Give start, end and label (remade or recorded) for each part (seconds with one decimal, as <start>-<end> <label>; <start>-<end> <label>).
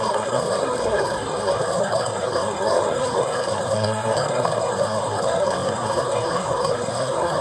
0.0-7.4 remade